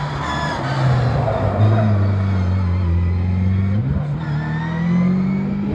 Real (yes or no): yes